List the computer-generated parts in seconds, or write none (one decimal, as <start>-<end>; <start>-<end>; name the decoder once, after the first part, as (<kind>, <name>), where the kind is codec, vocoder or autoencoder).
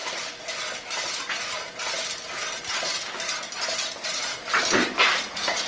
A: none